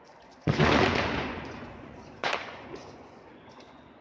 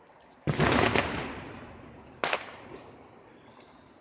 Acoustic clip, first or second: second